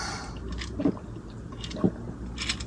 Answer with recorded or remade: recorded